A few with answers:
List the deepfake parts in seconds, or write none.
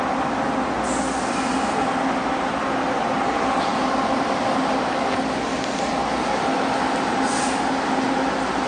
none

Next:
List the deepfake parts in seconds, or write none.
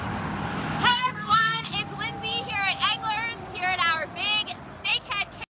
0.9-1.7 (codec, SNAC)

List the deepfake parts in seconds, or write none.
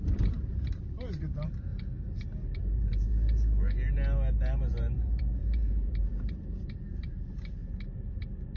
0.0-1.7 (vocoder, BigVGAN v2); 2.6-3.1; 4.7-7.6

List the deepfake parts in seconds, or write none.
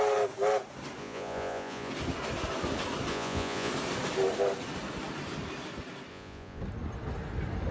1.0-1.9 (vocoder, Vocos); 3.1-3.7; 6.1-6.6